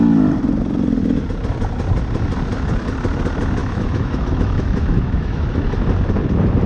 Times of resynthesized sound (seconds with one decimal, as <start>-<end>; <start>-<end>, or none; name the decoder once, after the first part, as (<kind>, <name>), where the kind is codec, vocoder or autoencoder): 3.6-5.6 (autoencoder, DAC-VAE)